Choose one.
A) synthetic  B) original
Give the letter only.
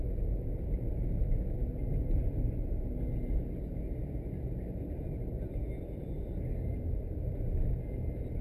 B